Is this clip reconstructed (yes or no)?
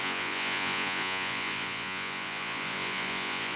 yes